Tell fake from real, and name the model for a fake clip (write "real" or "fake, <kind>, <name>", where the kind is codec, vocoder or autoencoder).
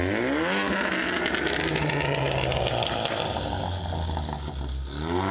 real